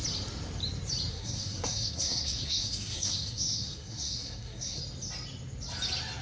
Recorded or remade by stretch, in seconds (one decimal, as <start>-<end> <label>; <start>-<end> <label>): 0.0-1.1 recorded; 1.1-4.8 remade; 4.8-6.2 recorded